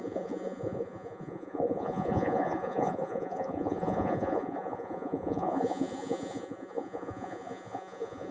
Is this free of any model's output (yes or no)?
no